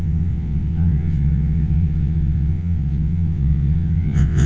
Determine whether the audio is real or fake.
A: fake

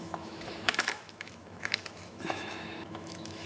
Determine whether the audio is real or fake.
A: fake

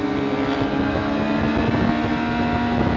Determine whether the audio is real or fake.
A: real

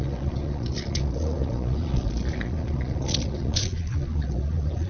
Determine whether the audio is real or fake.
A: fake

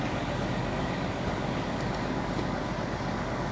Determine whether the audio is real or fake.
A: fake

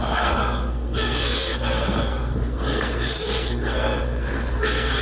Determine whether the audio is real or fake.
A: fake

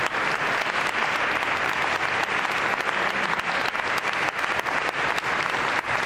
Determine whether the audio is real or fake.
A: real